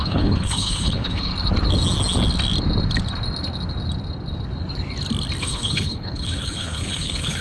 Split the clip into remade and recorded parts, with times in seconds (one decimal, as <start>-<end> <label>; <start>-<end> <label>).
0.0-1.3 remade; 1.3-5.4 recorded; 5.4-7.4 remade